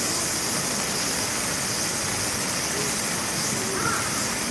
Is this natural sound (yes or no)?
yes